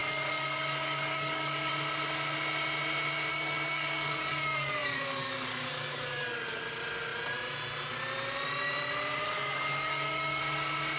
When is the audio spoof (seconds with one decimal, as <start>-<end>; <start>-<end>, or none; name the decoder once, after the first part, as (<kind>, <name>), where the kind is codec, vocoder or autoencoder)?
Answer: 0.0-1.7 (codec, DAC); 3.3-6.6; 9.2-10.4